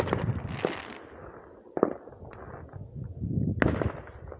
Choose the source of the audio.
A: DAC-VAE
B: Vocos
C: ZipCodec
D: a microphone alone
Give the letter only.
D